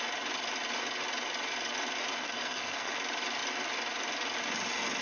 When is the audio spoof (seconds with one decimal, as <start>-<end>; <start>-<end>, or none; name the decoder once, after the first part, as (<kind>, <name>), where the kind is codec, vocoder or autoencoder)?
2.2-2.9 (codec, SNAC)